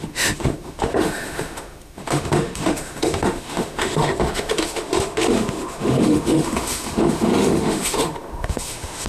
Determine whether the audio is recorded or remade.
remade